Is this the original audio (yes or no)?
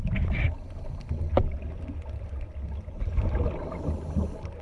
yes